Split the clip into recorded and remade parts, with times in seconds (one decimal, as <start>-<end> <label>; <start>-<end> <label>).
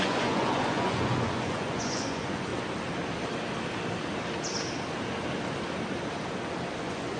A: 0.0-2.5 remade; 2.5-6.8 recorded; 6.8-7.2 remade